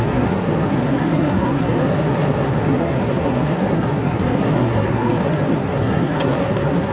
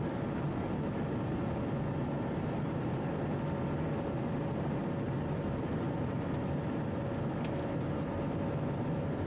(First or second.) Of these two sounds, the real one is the second